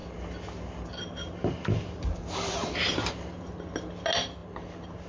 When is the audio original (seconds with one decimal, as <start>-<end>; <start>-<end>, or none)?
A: 0.0-5.1

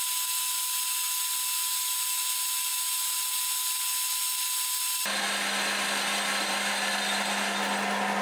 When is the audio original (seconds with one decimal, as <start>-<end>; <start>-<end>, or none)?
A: 0.0-8.2

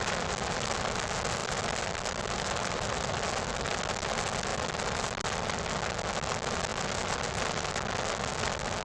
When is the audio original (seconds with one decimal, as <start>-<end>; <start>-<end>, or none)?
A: 0.0-1.4; 3.8-4.5; 5.6-8.8

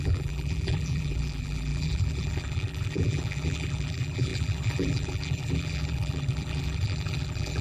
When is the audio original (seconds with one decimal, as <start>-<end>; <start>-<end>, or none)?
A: none

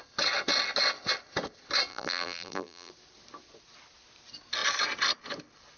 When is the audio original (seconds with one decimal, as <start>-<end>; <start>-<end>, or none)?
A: 0.0-1.9; 2.9-5.8

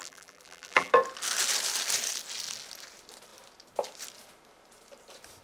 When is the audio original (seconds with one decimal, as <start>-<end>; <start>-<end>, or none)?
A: 0.9-5.4

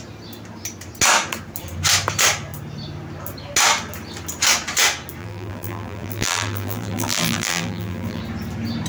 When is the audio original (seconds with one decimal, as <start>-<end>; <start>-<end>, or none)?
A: 0.0-5.2; 8.2-8.9